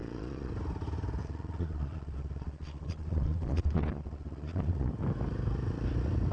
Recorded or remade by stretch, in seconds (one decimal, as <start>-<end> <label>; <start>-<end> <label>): 0.0-0.5 remade; 0.5-1.2 recorded; 1.2-4.9 remade; 4.9-6.3 recorded